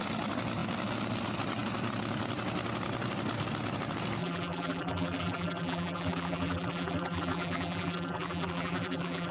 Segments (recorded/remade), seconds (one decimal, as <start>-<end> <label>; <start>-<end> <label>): 0.0-4.2 recorded; 4.2-9.3 remade